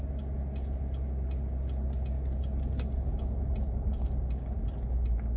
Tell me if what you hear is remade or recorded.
recorded